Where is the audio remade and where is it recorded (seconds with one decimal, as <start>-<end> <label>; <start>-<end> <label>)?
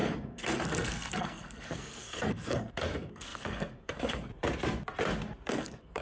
0.0-4.3 remade; 4.3-5.5 recorded; 5.5-6.0 remade